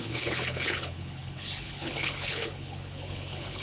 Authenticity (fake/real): fake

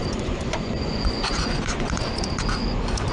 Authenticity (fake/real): fake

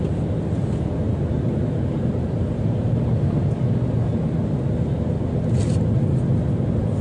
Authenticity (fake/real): real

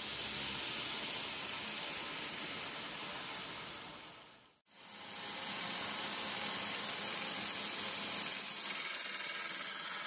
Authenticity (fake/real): real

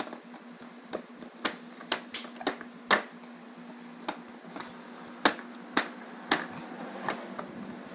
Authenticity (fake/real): real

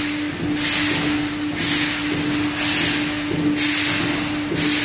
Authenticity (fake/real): real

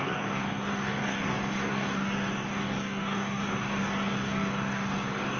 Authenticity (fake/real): fake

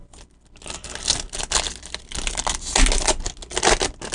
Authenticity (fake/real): real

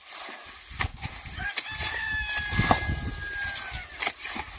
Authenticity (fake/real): real